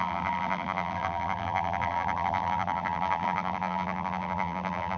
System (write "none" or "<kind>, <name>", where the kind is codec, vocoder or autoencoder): vocoder, BigVGAN v2